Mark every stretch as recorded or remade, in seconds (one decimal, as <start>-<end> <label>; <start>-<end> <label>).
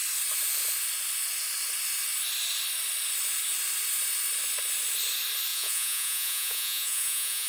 0.0-5.5 recorded; 5.5-7.5 remade